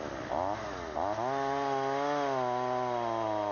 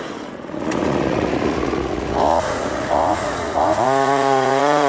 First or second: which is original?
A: first